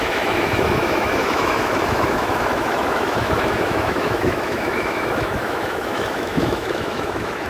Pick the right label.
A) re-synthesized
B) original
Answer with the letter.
A